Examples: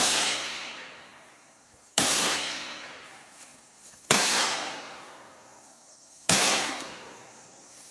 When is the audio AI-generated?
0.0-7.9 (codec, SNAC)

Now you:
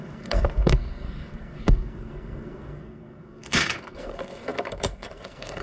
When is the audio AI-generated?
0.0-5.6 (codec, SNAC)

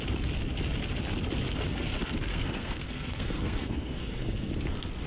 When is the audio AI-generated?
2.3-4.5 (codec, SNAC)

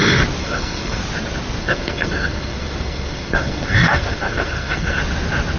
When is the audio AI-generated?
0.4-1.0 (codec, SNAC); 1.6-5.0